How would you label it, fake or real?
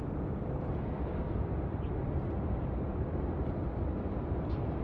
real